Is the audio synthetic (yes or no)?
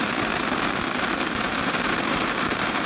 yes